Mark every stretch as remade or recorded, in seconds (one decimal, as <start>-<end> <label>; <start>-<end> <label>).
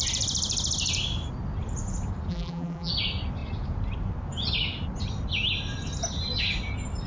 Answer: 0.0-2.3 recorded; 2.3-2.9 remade; 2.9-7.1 recorded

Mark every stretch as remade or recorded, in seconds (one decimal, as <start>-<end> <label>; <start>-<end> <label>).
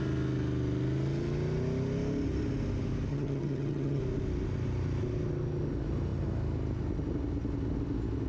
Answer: 0.0-3.1 recorded; 3.1-4.0 remade; 4.0-8.3 recorded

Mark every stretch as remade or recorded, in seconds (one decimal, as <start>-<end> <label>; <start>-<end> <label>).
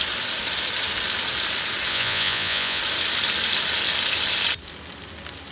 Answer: 0.0-1.9 recorded; 1.9-2.8 remade; 2.8-5.5 recorded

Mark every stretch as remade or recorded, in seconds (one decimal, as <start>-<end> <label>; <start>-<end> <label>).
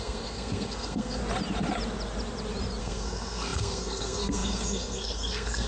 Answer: 0.0-1.2 remade; 1.2-2.8 recorded; 2.8-5.7 remade